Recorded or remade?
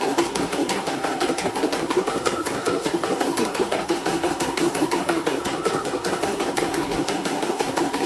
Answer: remade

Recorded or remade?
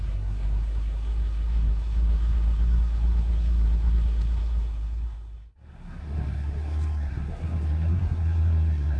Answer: remade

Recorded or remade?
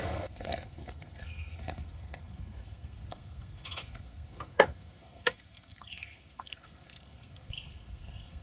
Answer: remade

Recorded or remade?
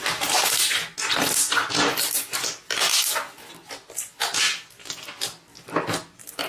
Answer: recorded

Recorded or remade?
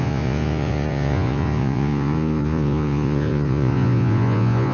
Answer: remade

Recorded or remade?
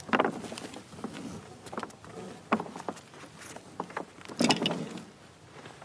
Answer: recorded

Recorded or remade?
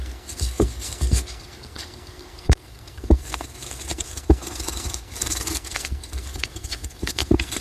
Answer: remade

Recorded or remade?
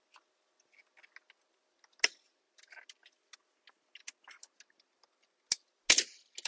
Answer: recorded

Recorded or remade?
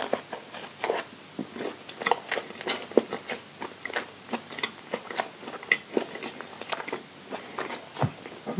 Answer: recorded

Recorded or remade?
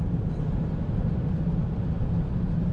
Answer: recorded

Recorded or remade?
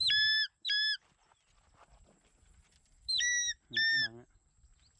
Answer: recorded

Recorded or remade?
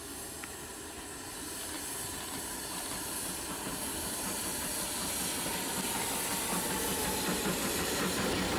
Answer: recorded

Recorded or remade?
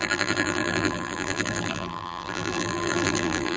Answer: remade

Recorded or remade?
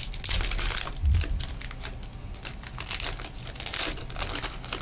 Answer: recorded